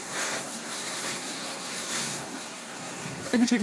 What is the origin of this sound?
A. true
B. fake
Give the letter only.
B